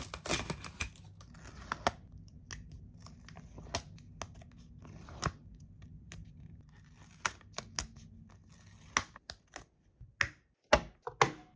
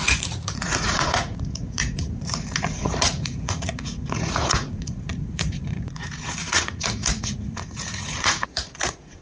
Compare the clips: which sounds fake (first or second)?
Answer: second